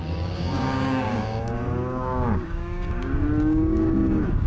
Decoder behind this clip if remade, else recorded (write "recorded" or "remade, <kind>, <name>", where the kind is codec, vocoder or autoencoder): remade, codec, DAC